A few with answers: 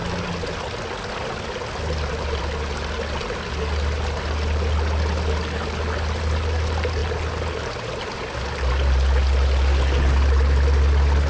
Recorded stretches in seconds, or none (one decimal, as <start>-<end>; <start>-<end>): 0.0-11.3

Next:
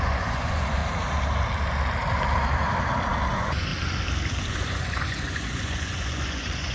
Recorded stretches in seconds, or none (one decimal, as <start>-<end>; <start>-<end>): 0.8-3.3; 3.7-4.5

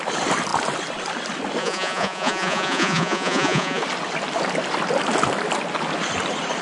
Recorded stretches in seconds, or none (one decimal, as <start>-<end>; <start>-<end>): 0.0-1.6; 3.8-6.6

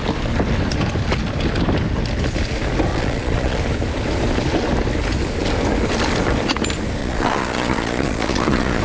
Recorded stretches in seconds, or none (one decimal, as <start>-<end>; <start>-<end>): 0.0-2.9; 3.6-7.0

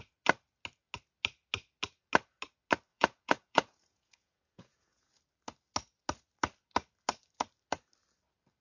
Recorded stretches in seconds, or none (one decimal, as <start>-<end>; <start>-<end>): 0.0-2.9; 5.1-8.6